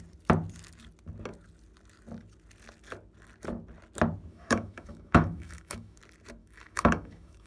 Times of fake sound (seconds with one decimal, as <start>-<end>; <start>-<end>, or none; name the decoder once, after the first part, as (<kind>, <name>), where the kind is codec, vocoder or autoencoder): 4.3-6.0 (autoencoder, DAC-VAE); 6.4-7.5